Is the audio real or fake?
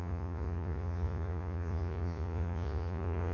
fake